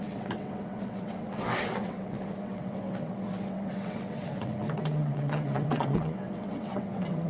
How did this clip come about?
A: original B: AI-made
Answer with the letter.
B